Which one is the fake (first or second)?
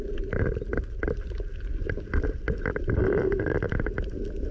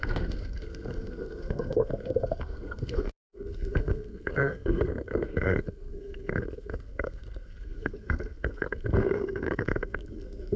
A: second